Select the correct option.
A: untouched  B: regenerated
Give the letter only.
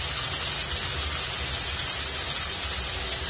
A